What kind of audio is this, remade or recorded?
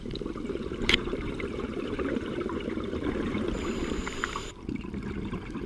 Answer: remade